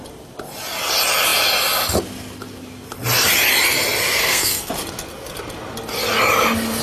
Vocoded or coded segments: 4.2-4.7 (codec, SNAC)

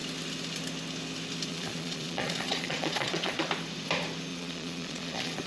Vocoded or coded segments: 1.5-3.5 (vocoder, Vocos); 4.3-5.5

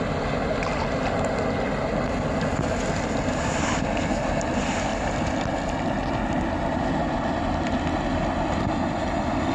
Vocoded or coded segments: none

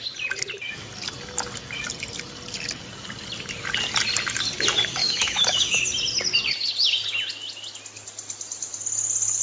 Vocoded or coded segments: 5.0-5.8 (autoencoder, DAC-VAE)

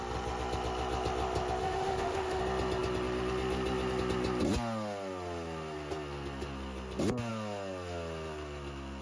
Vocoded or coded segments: 1.6-2.4 (autoencoder, DAC-VAE)

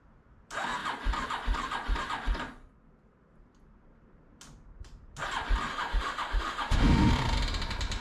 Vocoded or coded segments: 5.7-7.1 (autoencoder, DAC-VAE)